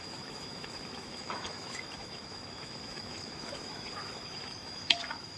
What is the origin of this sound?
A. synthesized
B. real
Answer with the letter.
A